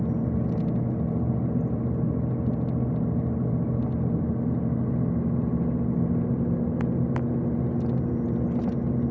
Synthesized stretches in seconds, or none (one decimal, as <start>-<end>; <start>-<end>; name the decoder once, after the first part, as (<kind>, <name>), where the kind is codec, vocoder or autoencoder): none